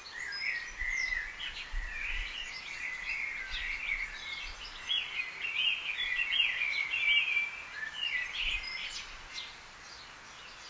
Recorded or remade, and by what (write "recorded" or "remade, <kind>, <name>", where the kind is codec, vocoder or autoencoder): recorded